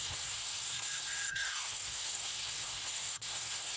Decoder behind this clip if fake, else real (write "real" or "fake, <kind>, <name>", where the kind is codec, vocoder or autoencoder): fake, codec, SNAC